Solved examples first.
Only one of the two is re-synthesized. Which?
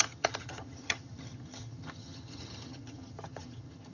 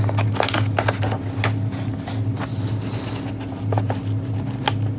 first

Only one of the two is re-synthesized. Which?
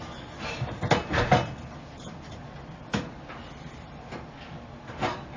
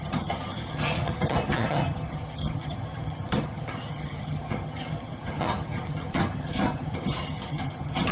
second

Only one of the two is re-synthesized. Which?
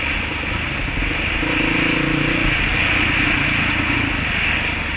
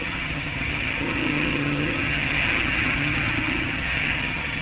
second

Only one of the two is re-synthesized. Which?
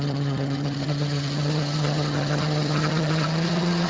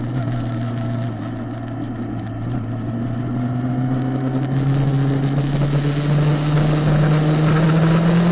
first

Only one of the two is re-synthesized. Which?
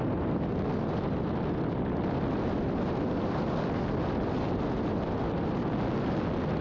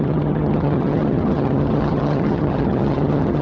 second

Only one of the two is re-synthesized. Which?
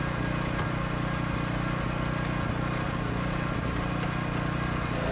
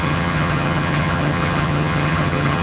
second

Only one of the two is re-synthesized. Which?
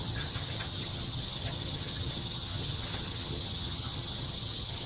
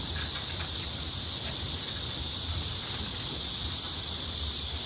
first